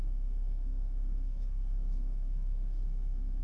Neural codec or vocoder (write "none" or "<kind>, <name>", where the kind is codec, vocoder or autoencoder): codec, SNAC